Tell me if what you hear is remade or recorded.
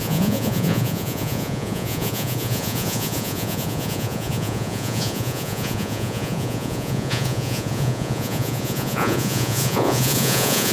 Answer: remade